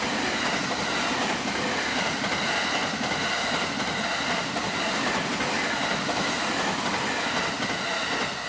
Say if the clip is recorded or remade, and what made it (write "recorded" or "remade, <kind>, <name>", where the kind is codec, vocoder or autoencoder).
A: recorded